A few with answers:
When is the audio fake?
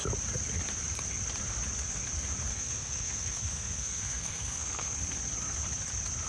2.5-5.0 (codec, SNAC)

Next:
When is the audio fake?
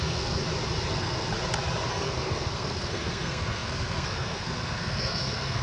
0.0-0.4 (codec, SNAC); 0.9-1.3; 1.9-5.6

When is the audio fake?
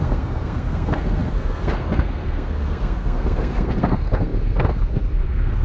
0.0-5.6 (codec, SNAC)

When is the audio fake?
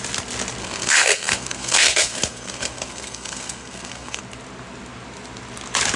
0.6-4.2 (codec, SNAC)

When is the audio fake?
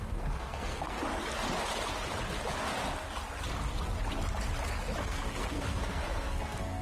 0.0-1.0 (codec, SNAC); 5.0-6.8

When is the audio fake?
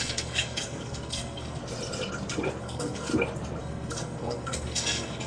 0.0-1.6 (codec, SNAC); 2.6-3.1; 3.6-5.3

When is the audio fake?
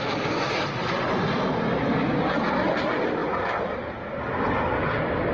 none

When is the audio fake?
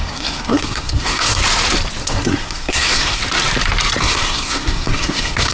0.0-1.4 (codec, SNAC); 2.0-3.2; 4.0-5.5